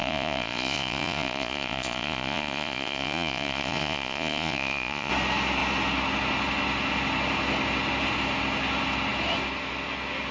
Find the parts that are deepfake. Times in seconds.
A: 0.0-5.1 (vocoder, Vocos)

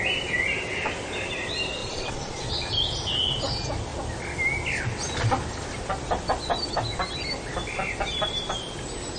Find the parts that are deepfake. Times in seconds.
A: 1.8-2.5 (vocoder, Vocos)